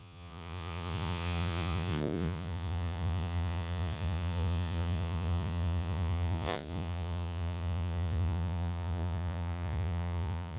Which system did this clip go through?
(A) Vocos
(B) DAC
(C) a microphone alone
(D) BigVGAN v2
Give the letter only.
A